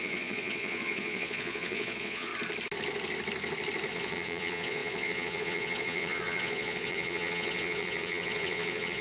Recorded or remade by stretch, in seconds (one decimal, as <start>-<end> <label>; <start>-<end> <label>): 0.0-2.3 remade; 2.3-3.9 recorded; 3.9-9.0 remade